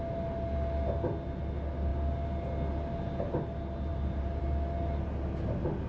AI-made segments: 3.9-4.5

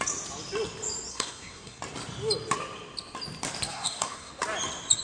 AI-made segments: 1.1-1.8; 3.7-4.3

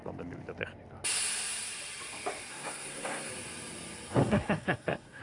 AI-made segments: 2.5-3.3; 4.2-5.2